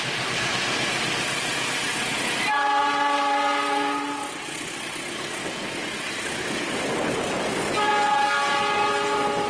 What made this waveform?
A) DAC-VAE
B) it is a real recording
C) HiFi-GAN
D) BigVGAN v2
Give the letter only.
B